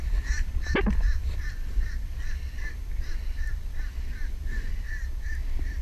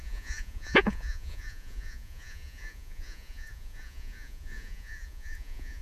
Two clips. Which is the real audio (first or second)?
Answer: first